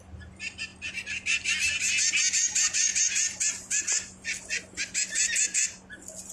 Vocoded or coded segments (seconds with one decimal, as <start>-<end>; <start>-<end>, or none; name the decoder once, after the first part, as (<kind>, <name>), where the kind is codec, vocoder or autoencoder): none